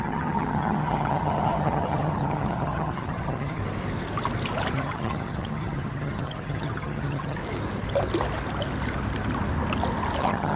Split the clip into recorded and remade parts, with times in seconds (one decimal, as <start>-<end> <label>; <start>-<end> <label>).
0.0-3.6 remade; 3.6-4.7 recorded; 4.7-7.4 remade; 7.4-10.2 recorded; 10.2-10.6 remade